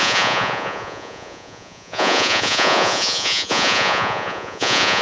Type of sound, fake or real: fake